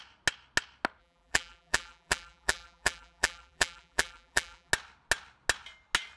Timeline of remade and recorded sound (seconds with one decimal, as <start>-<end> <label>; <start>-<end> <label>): 0.0-1.0 recorded; 1.0-4.7 remade; 4.7-6.2 recorded